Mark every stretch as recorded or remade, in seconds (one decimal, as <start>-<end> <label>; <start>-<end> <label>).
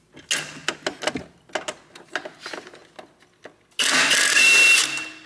0.0-5.3 recorded